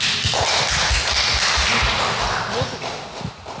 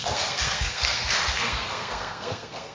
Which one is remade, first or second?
second